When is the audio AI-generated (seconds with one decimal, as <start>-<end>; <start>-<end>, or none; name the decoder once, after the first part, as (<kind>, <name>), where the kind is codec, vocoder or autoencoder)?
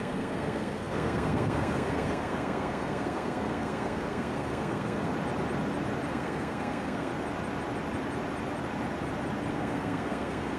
0.0-5.1 (codec, SNAC); 6.1-7.1; 9.5-10.6